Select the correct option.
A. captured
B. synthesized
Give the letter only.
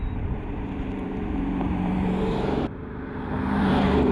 B